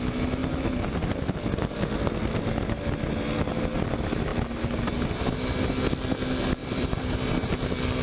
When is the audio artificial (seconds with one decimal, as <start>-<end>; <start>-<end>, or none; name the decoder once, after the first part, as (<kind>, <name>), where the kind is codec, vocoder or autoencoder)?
0.4-1.3 (vocoder, BigVGAN v2); 6.6-7.5